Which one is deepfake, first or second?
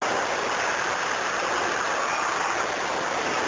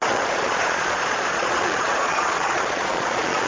second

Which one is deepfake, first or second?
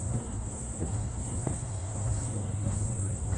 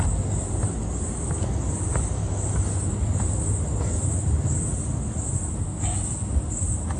first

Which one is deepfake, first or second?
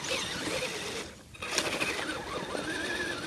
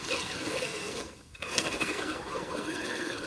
second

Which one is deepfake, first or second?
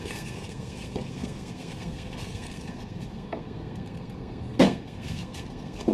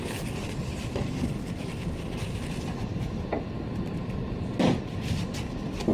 first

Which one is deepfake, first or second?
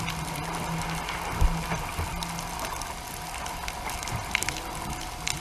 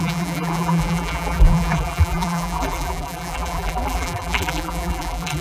second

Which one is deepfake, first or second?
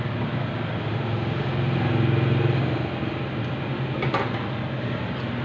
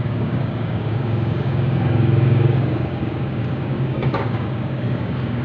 second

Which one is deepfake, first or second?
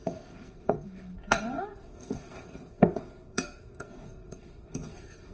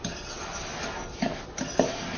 first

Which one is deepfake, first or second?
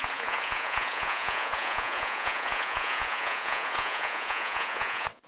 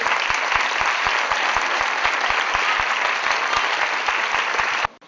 first